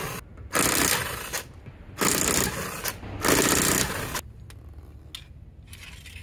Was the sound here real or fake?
real